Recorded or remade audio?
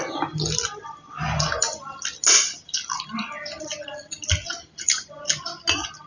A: recorded